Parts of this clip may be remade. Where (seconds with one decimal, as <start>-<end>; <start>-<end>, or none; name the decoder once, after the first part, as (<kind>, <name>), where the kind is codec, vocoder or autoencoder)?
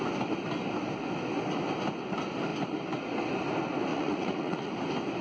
3.9-4.7 (vocoder, Vocos)